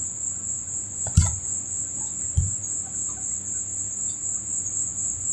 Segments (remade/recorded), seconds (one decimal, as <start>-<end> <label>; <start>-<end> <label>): 0.0-3.0 remade; 3.0-4.6 recorded; 4.6-5.3 remade